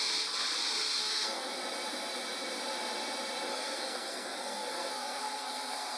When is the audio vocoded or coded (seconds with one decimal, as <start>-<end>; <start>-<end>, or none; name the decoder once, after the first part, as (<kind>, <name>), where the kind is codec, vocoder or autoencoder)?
1.0-1.6 (codec, SNAC); 3.5-6.0